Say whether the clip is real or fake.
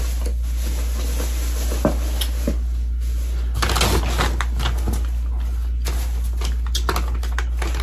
real